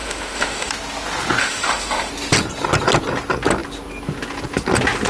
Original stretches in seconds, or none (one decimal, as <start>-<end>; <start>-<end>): 0.7-1.4; 2.1-5.1